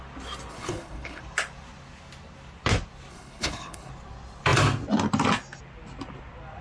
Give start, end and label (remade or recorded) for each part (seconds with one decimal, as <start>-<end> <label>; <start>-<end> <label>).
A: 0.0-0.5 recorded; 0.5-1.2 remade; 1.2-3.1 recorded; 3.1-3.9 remade; 3.9-6.6 recorded